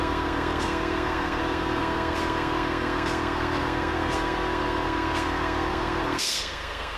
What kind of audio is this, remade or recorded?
remade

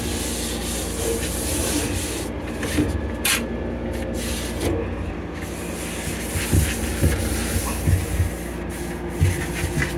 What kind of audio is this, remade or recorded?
recorded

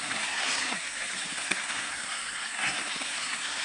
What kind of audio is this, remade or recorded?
remade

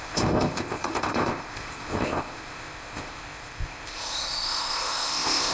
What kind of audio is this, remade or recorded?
remade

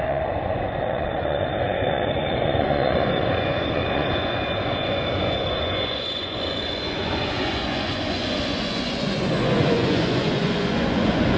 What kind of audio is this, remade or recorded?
remade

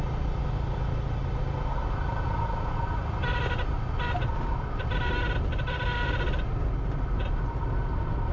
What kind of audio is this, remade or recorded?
recorded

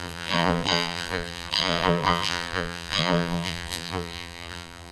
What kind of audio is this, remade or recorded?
remade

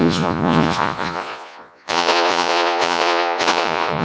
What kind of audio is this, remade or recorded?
remade